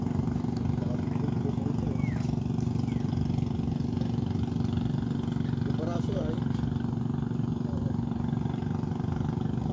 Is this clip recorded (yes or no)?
yes